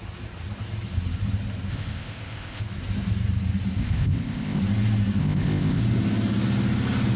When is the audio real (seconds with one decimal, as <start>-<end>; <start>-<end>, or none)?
0.0-1.7; 2.6-3.8; 4.6-5.2; 5.8-7.2